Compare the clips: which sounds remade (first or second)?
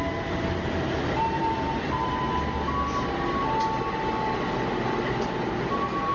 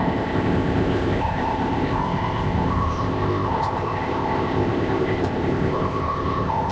second